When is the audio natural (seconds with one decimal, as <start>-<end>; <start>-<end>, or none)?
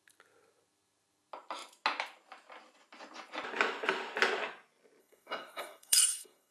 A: 0.0-5.0